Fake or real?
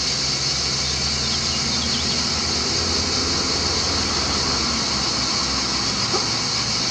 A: real